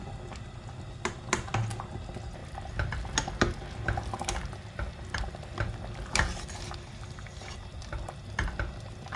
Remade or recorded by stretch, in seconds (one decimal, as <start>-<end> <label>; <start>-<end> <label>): 0.0-9.2 recorded